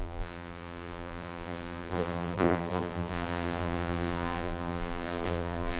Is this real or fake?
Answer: fake